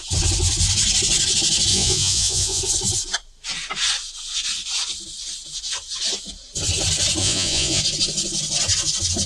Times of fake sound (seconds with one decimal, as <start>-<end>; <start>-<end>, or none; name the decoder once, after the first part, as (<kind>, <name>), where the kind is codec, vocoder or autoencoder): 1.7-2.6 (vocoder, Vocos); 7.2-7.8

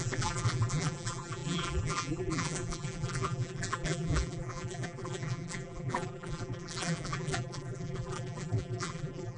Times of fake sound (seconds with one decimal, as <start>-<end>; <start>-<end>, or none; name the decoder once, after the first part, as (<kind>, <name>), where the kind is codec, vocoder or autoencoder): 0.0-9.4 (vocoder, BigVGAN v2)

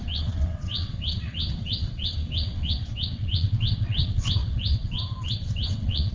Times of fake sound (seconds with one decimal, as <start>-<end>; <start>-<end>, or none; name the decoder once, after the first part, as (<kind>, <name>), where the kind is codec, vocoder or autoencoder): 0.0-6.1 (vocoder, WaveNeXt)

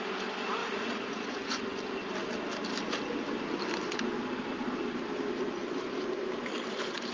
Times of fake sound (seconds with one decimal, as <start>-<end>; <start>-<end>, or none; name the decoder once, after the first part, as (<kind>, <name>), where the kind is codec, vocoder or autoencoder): 0.6-1.6 (vocoder, Vocos)